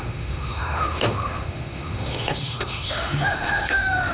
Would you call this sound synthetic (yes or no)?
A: yes